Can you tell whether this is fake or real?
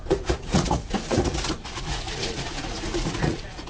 fake